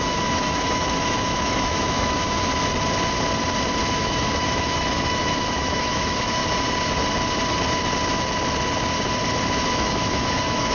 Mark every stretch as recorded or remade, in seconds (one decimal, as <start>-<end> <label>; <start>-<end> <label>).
0.0-2.5 remade; 2.5-3.9 recorded; 3.9-6.4 remade; 6.4-9.7 recorded; 9.7-10.7 remade